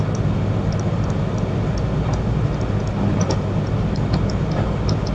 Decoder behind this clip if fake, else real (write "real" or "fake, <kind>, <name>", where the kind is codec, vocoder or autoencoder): real